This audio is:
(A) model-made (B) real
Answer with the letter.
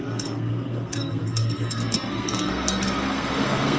A